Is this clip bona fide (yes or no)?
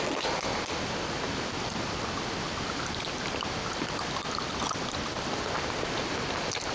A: yes